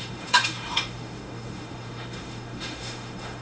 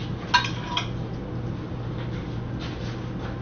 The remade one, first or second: first